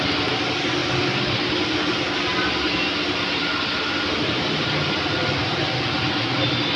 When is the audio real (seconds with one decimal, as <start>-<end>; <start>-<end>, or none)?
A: 0.0-6.8